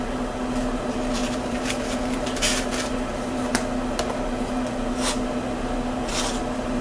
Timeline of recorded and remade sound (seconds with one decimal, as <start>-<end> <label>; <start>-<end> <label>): 0.0-6.8 recorded